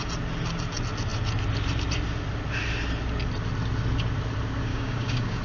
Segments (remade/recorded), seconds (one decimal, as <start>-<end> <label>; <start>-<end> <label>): 0.0-4.7 recorded; 4.7-5.4 remade